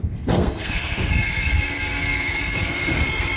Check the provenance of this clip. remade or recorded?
remade